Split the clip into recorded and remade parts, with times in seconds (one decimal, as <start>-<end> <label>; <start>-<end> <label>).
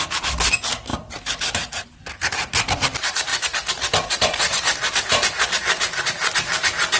0.0-7.0 recorded